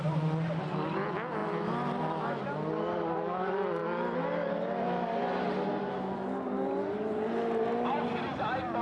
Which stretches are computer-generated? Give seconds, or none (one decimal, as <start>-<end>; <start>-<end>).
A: none